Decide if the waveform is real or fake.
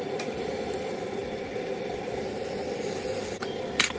real